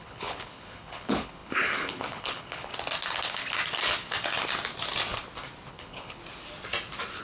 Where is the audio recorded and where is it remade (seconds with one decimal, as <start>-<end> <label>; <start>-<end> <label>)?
0.0-2.7 remade; 2.7-5.7 recorded; 5.7-6.2 remade; 6.2-7.2 recorded